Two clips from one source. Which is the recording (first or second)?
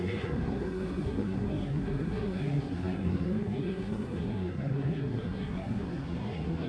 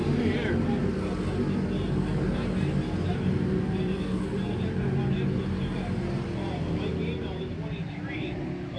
second